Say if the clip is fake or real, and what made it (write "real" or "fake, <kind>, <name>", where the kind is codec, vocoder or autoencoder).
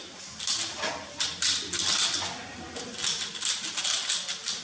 real